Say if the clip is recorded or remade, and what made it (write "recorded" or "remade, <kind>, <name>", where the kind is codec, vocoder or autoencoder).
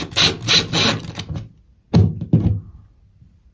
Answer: recorded